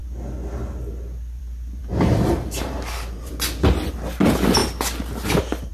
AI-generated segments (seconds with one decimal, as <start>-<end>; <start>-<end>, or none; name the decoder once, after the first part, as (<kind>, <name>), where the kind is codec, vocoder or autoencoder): 1.8-3.3 (vocoder, BigVGAN v2)